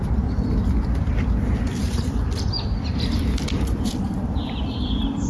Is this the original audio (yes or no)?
no